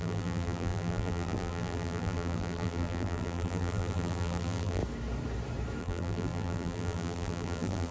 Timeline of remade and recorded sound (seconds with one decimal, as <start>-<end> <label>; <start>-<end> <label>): 0.0-4.8 remade; 4.8-5.8 recorded; 5.8-7.9 remade